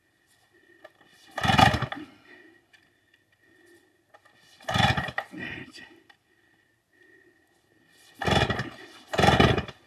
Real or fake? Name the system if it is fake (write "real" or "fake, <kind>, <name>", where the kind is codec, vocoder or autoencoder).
real